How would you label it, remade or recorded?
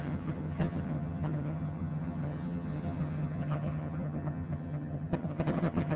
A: remade